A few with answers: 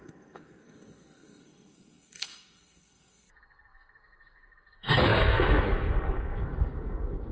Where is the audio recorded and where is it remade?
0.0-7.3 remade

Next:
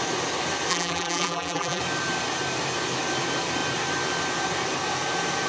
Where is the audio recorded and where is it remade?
0.0-0.7 recorded; 0.7-1.8 remade; 1.8-5.5 recorded

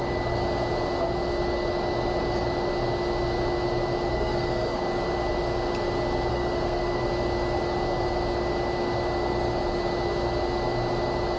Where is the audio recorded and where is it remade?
0.0-4.1 recorded; 4.1-4.8 remade; 4.8-6.3 recorded; 6.3-7.0 remade; 7.0-11.4 recorded

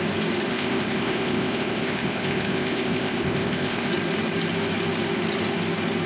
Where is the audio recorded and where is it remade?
0.0-0.5 recorded; 0.5-3.9 remade; 3.9-6.1 recorded

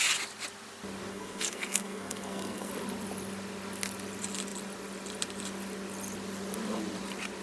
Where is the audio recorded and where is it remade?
0.0-1.1 recorded; 1.1-2.7 remade; 2.7-7.4 recorded

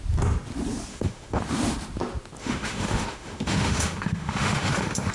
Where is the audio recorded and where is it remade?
0.0-0.9 recorded; 0.9-1.4 remade; 1.4-2.4 recorded; 2.4-5.1 remade

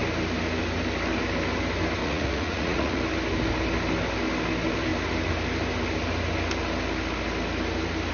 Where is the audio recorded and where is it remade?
0.0-2.0 recorded; 2.0-3.0 remade; 3.0-8.1 recorded

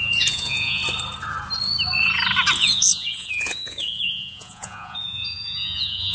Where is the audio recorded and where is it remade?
0.0-0.8 remade; 0.8-2.6 recorded; 2.6-6.1 remade